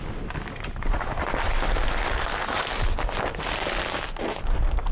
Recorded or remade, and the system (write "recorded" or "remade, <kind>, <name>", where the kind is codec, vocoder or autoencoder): recorded